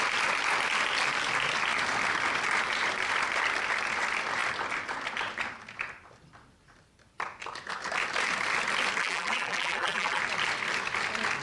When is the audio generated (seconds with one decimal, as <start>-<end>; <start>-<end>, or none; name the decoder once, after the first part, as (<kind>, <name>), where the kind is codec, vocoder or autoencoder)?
9.0-10.2 (vocoder, BigVGAN v2)